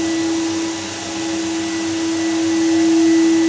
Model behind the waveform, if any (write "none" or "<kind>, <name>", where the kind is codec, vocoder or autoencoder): none